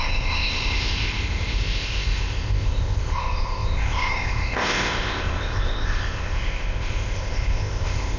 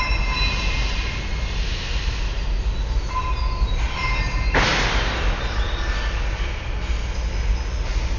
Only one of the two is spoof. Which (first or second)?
first